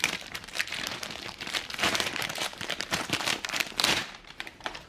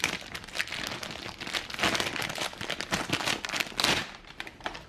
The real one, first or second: second